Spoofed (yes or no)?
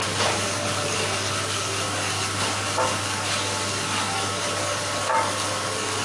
yes